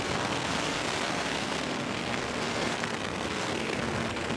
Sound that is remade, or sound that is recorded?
remade